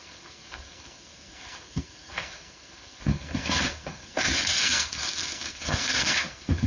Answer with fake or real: fake